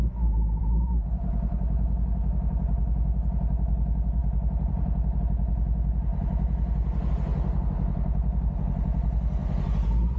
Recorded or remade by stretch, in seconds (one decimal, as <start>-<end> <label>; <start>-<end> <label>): 0.0-10.2 recorded